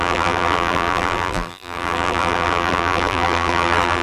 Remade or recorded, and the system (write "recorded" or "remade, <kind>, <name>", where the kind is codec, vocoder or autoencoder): remade, vocoder, BigVGAN v2